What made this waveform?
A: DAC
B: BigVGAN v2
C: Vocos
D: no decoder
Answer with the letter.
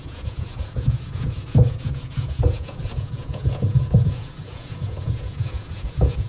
C